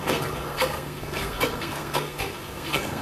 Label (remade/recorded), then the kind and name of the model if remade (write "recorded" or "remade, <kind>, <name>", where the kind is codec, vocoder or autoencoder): remade, codec, SNAC